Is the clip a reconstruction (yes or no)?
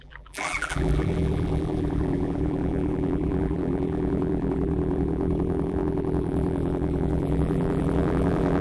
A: yes